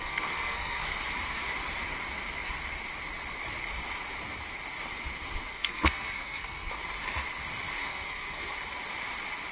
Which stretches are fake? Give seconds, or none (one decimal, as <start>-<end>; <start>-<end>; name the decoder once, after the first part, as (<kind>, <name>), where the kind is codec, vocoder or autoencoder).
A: 0.0-1.0 (codec, SNAC); 5.5-6.7; 7.8-8.5